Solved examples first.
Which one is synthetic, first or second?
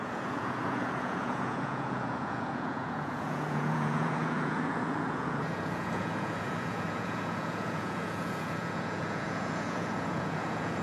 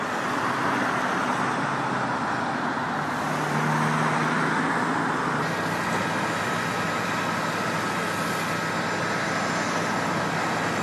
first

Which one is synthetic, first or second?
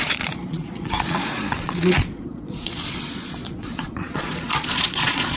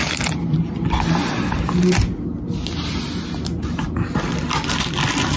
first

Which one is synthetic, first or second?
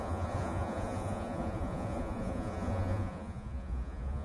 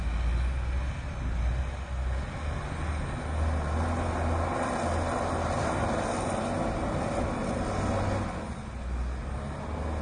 first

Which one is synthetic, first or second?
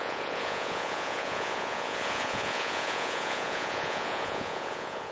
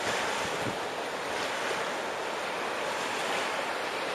first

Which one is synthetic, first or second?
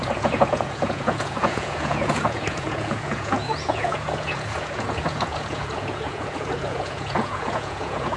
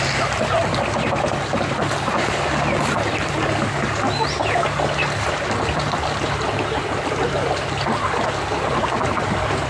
first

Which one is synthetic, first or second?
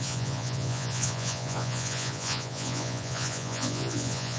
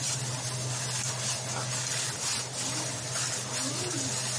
first